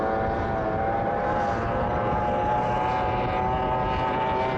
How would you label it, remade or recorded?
recorded